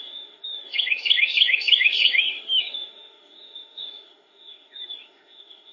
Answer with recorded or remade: remade